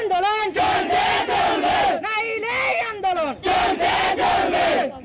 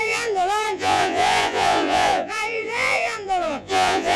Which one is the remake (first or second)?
second